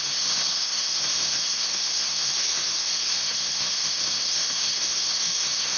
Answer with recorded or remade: remade